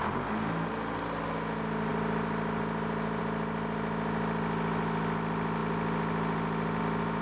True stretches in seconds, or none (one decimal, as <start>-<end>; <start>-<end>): 0.0-7.2

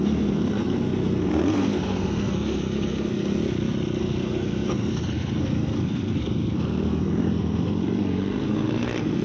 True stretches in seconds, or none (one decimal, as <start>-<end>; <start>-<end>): 3.4-4.0

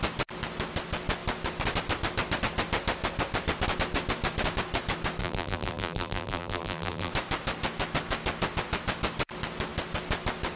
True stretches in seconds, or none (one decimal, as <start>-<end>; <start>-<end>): 0.0-5.2; 7.1-10.6

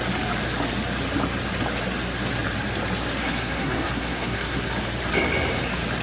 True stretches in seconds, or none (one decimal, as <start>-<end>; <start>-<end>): 0.0-3.2; 4.7-6.0